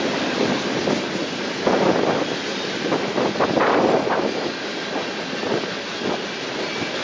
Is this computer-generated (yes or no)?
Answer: no